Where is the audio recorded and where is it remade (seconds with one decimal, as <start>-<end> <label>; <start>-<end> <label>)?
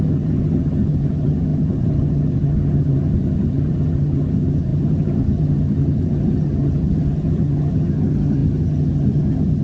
0.0-9.6 remade